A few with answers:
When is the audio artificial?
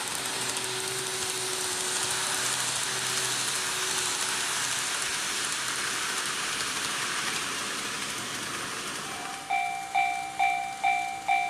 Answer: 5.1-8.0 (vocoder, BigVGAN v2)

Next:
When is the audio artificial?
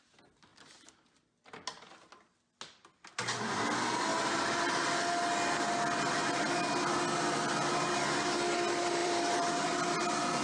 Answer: 9.0-9.6 (vocoder, BigVGAN v2)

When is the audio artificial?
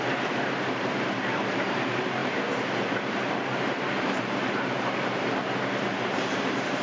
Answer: 0.0-6.8 (vocoder, BigVGAN v2)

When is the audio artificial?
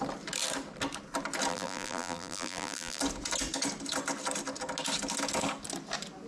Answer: 1.5-3.0 (vocoder, BigVGAN v2)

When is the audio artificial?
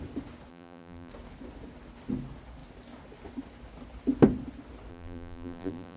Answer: 0.5-1.1 (vocoder, BigVGAN v2); 4.9-6.0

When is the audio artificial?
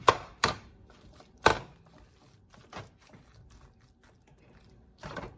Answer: 0.0-1.5 (vocoder, BigVGAN v2); 4.4-5.4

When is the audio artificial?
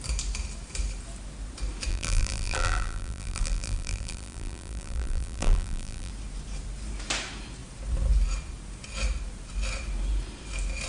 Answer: 1.9-6.1 (vocoder, BigVGAN v2)